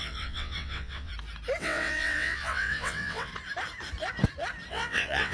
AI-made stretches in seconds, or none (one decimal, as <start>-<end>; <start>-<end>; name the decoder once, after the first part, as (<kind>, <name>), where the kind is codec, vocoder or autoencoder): 0.0-1.1 (vocoder, WaveNeXt); 1.6-3.3; 4.7-5.3